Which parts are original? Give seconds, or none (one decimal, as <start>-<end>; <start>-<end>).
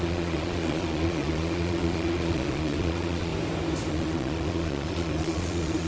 3.3-3.9